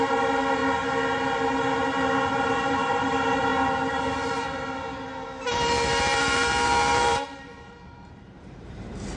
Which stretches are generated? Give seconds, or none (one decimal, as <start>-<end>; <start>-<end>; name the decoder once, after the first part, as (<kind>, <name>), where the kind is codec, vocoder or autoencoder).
0.0-0.6 (vocoder, BigVGAN v2); 2.4-3.5; 5.4-9.2